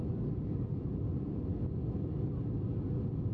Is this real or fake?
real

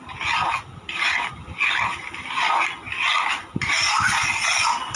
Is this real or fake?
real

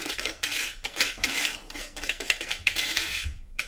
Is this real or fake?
fake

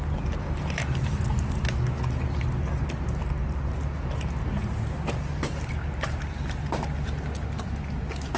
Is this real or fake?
real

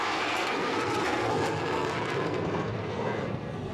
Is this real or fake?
fake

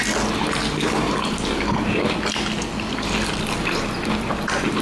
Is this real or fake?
real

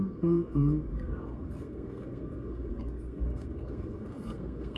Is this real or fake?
fake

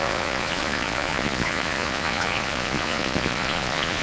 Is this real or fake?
fake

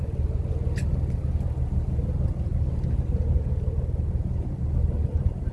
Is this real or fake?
real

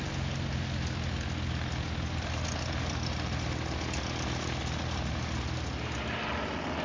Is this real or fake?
real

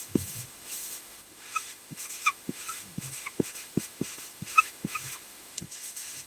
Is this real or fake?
fake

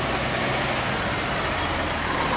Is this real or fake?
real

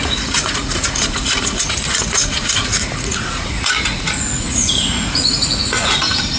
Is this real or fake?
fake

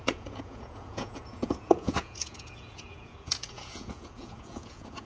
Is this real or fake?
fake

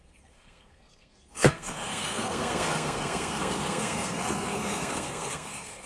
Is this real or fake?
fake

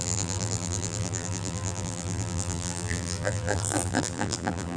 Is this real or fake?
fake